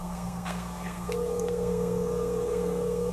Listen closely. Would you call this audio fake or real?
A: fake